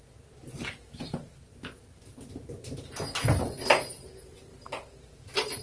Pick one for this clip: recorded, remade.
recorded